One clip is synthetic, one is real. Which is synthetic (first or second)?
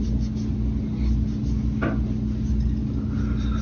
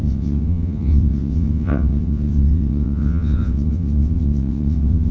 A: second